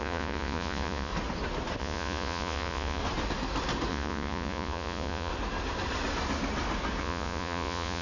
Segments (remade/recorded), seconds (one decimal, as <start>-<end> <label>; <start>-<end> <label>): 0.0-1.1 remade; 1.1-1.8 recorded; 1.8-3.0 remade; 3.0-3.9 recorded; 3.9-5.3 remade; 5.3-7.0 recorded; 7.0-8.0 remade